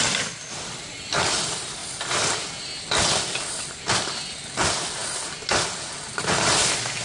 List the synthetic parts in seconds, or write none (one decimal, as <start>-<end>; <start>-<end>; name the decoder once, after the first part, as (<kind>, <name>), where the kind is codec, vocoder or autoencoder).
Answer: none